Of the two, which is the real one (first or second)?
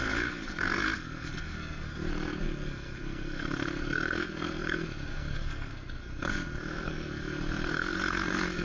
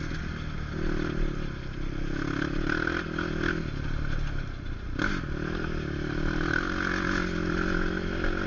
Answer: second